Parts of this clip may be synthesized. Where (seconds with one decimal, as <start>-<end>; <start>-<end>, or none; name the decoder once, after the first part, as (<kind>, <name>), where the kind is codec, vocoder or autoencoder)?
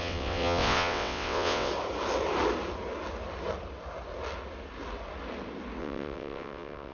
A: 0.0-1.7 (vocoder, WaveNeXt); 5.8-6.9